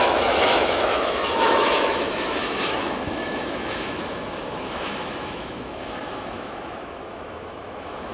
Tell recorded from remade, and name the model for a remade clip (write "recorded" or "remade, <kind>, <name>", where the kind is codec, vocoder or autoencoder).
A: remade, autoencoder, DAC-VAE